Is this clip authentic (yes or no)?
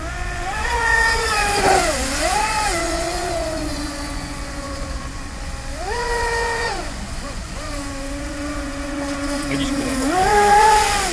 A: no